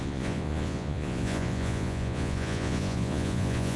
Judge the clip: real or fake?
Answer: fake